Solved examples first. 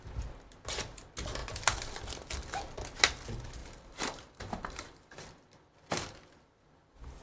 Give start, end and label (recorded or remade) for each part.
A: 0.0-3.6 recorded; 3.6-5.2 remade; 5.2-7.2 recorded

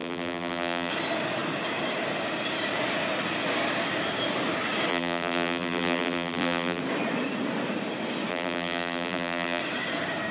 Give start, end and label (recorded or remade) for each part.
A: 0.0-0.9 remade; 0.9-4.9 recorded; 4.9-6.8 remade; 6.8-8.3 recorded; 8.3-9.6 remade; 9.6-10.3 recorded

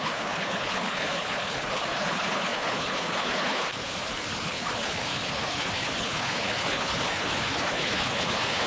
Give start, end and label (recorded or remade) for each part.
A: 0.0-8.7 remade

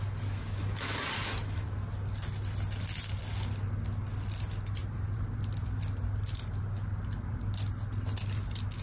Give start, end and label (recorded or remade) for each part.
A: 0.0-4.8 recorded; 4.8-5.4 remade; 5.4-8.8 recorded

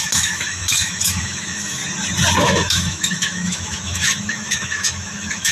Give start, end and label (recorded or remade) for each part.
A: 0.0-1.8 remade; 1.8-2.4 recorded; 2.4-5.5 remade

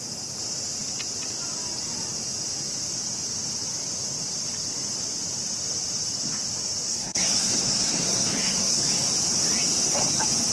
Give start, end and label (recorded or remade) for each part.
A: 0.0-6.9 recorded; 6.9-8.8 remade; 8.8-10.5 recorded

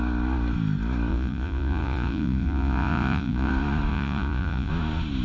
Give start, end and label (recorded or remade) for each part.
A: 0.0-1.1 recorded; 1.1-3.5 remade; 3.5-3.9 recorded; 3.9-4.7 remade; 4.7-5.2 recorded

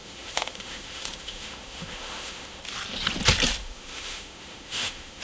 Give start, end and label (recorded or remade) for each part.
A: 0.0-2.6 remade; 2.6-3.6 recorded; 3.6-5.2 remade